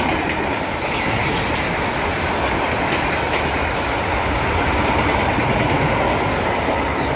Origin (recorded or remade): recorded